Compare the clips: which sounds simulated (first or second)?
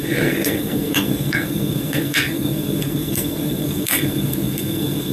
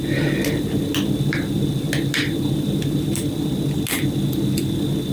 first